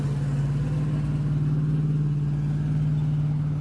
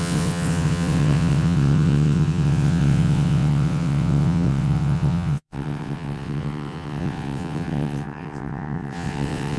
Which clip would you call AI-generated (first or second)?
second